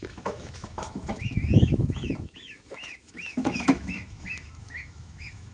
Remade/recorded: remade